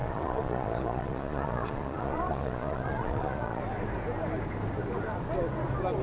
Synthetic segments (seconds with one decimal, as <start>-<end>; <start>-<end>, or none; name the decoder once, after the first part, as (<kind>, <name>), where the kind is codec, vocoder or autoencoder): 0.0-3.6 (vocoder, Vocos)